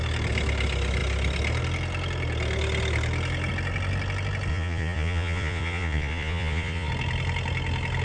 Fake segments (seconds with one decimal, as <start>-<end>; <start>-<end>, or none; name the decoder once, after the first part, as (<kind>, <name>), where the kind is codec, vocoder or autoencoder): 4.5-6.9 (vocoder, Vocos)

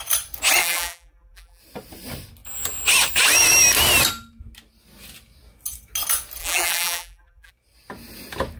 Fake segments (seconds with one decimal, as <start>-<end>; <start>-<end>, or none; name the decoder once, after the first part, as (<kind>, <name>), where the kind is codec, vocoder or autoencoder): 0.6-1.6 (vocoder, BigVGAN v2); 6.4-7.5

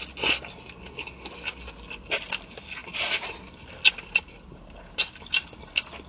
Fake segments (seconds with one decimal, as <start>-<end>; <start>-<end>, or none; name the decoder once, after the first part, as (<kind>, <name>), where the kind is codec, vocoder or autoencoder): none

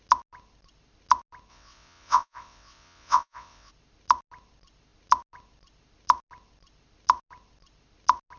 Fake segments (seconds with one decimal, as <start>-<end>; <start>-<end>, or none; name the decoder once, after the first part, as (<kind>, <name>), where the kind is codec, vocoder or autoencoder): 1.5-3.7 (vocoder, WaveNeXt)

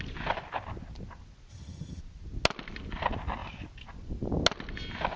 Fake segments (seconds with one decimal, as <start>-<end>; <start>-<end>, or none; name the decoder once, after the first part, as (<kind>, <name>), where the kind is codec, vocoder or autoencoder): 1.5-2.0 (vocoder, HiFi-GAN)

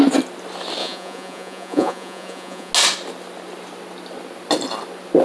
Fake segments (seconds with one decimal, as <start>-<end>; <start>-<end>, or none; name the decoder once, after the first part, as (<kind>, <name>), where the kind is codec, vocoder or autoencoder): 0.8-2.7 (vocoder, Vocos)

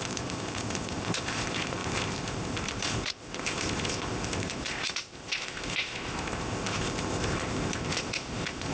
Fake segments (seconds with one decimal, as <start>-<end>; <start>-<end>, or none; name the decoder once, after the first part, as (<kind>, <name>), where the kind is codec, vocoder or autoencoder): 0.0-8.7 (codec, ZipCodec)